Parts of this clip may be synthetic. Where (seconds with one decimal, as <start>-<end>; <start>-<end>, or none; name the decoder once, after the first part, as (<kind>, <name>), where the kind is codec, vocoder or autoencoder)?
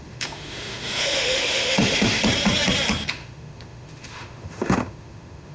0.0-2.2 (autoencoder, DAC-VAE); 3.1-5.5